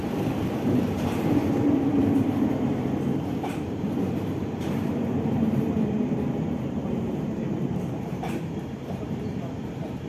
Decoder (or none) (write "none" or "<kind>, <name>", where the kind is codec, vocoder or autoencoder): vocoder, BigVGAN v2